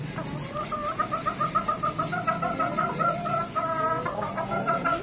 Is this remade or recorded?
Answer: recorded